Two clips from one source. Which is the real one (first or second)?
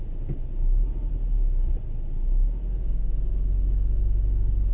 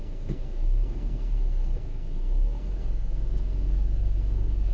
first